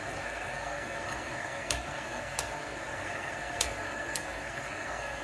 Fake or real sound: fake